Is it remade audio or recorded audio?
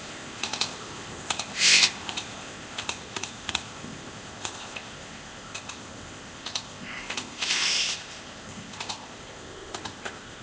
remade